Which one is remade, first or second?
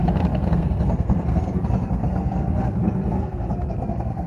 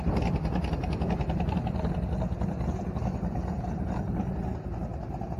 first